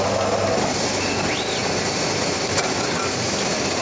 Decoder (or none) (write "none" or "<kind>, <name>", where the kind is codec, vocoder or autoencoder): none